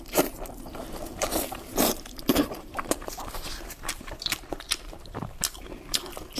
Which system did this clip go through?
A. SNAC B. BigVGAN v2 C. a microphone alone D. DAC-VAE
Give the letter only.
B